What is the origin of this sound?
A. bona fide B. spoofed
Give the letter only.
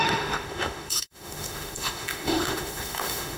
B